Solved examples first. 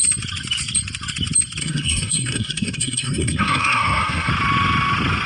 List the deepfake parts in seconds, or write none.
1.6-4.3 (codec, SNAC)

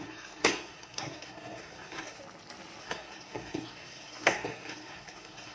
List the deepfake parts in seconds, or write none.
0.0-2.2 (codec, SNAC); 2.8-5.5

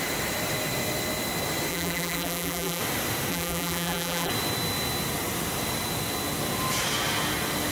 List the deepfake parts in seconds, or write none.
1.7-2.8 (vocoder, BigVGAN v2); 3.3-4.3

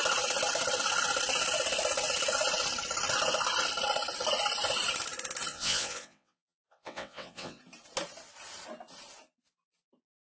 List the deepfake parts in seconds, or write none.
5.5-7.6 (vocoder, WaveNeXt)

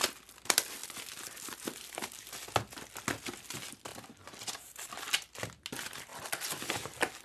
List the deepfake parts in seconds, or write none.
3.9-4.9 (vocoder, BigVGAN v2); 6.1-6.7